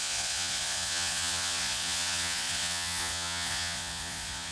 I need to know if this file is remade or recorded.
remade